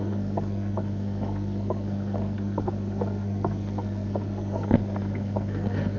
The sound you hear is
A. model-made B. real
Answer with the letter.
A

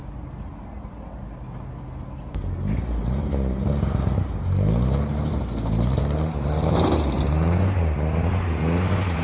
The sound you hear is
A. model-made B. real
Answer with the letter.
B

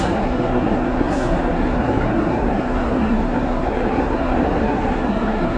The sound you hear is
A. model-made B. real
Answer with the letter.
A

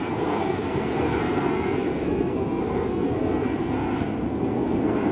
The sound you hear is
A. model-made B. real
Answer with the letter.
A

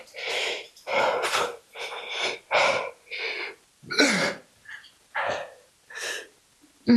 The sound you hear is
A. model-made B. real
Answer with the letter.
B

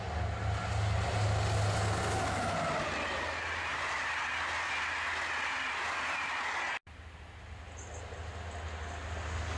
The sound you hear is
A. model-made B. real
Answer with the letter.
B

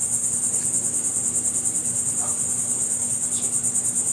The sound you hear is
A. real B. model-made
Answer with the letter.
A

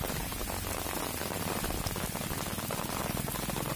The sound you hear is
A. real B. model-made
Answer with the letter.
A